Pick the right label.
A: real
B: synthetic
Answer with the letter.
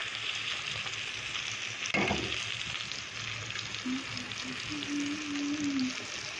A